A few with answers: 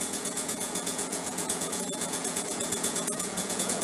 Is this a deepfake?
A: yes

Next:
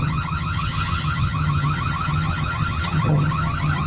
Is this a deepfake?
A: yes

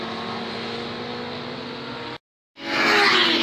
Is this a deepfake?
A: no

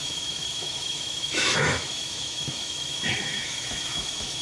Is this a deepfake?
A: yes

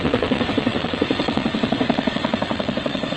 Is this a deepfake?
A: yes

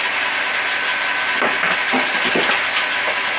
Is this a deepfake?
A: no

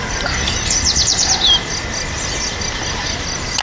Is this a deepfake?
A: no